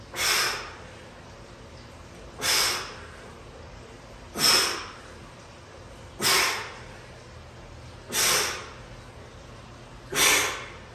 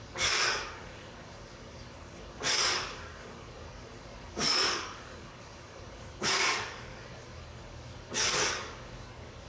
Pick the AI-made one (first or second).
second